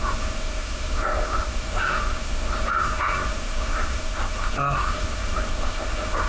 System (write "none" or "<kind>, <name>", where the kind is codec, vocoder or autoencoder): codec, SNAC